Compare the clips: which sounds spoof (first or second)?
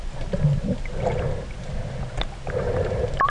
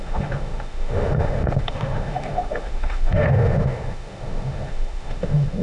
second